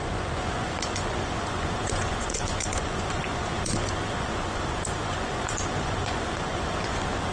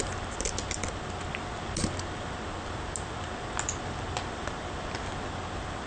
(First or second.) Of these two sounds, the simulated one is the first